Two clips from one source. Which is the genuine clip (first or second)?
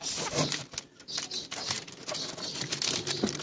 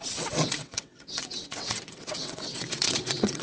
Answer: first